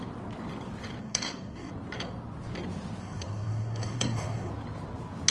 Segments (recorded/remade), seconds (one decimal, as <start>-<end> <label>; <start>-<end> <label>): 0.0-1.0 recorded; 1.0-1.7 remade; 1.7-3.0 recorded; 3.0-4.5 remade; 4.5-5.3 recorded